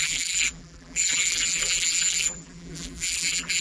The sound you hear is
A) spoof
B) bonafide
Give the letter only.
A